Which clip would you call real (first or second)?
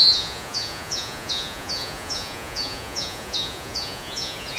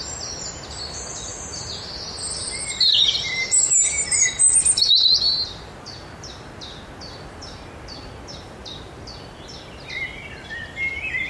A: second